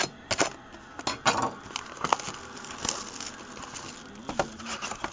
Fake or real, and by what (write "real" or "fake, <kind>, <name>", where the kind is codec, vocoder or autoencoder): real